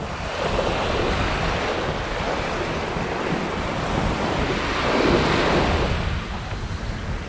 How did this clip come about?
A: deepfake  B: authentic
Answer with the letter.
B